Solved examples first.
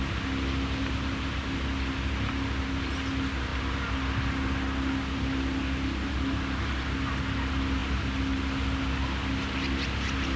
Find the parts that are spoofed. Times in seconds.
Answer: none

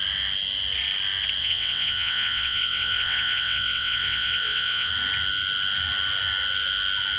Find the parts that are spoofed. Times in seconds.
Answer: 1.4-4.9 (vocoder, WaveNeXt)

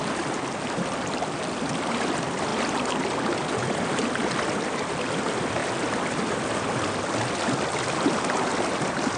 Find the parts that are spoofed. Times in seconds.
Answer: none

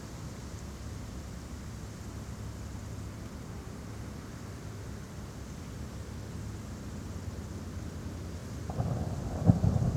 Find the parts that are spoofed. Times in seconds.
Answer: none

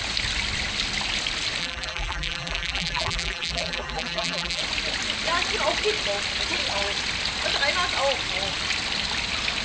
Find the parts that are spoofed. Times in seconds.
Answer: 1.6-4.6 (vocoder, BigVGAN v2)

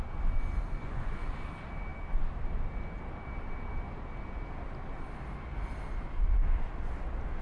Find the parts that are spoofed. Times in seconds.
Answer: 0.8-1.3 (vocoder, Vocos)

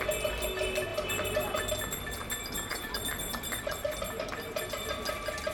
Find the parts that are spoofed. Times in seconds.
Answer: 0.9-1.7 (vocoder, BigVGAN v2); 2.7-4.6

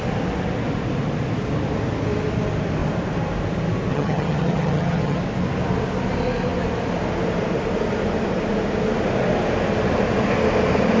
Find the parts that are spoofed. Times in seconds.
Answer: 3.9-5.2 (vocoder, HiFi-GAN)